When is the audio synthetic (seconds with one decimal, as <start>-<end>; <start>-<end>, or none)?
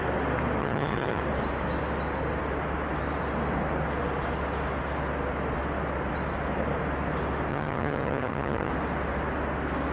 0.6-1.2; 7.5-8.7